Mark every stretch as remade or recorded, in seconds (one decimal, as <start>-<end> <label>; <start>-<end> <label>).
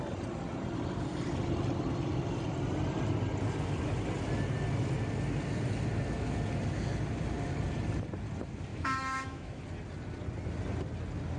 0.0-8.7 recorded; 8.7-9.6 remade; 9.6-11.4 recorded